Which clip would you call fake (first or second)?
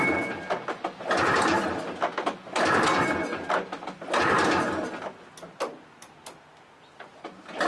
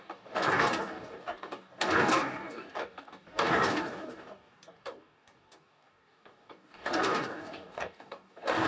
second